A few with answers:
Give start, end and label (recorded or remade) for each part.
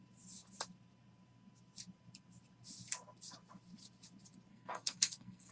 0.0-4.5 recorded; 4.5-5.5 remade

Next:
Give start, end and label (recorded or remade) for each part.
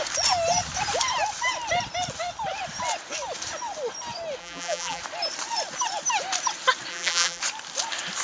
0.0-4.4 recorded; 4.4-5.0 remade; 5.0-6.9 recorded; 6.9-7.4 remade; 7.4-8.2 recorded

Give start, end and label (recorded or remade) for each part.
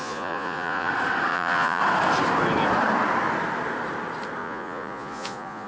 0.0-0.9 remade; 0.9-1.3 recorded; 1.3-1.8 remade; 1.8-4.4 recorded; 4.4-5.7 remade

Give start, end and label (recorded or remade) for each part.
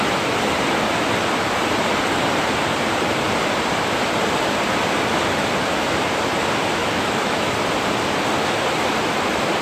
0.0-6.8 recorded; 6.8-7.5 remade; 7.5-9.6 recorded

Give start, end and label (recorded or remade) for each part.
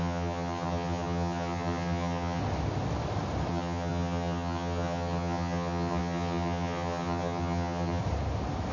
0.0-2.4 remade; 2.4-3.5 recorded; 3.5-8.0 remade; 8.0-8.7 recorded